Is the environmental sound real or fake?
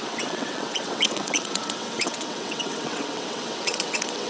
fake